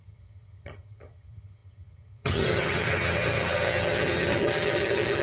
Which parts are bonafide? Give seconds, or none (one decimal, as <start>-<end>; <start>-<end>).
none